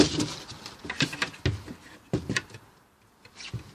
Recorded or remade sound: recorded